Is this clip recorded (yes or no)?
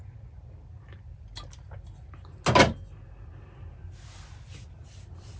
yes